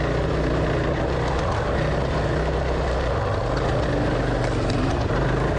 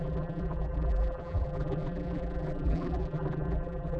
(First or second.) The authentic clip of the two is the first